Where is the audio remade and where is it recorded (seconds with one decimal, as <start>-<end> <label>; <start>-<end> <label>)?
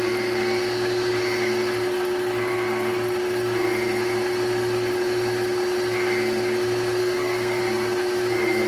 0.0-7.0 recorded; 7.0-7.6 remade; 7.6-8.7 recorded